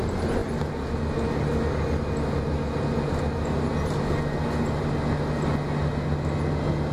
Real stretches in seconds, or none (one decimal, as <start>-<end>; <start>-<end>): 0.0-6.9